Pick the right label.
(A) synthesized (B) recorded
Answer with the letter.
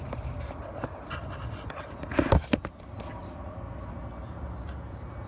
B